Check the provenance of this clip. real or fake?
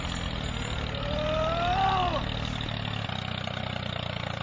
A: real